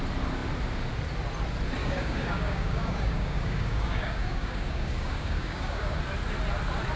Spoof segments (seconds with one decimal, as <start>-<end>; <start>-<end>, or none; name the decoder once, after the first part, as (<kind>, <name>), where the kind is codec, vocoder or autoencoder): 1.8-6.0 (codec, DAC)